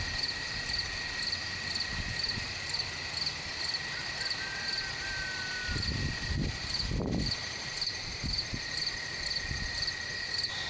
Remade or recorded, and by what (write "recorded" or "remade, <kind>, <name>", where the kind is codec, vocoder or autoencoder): recorded